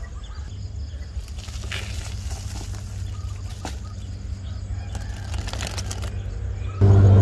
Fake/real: real